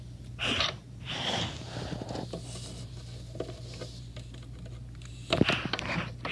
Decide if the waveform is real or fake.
real